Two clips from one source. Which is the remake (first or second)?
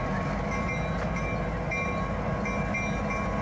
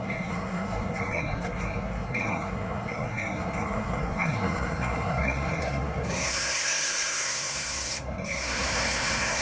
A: second